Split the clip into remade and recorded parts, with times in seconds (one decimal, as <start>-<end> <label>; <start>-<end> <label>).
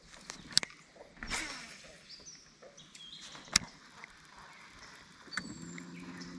0.0-6.4 recorded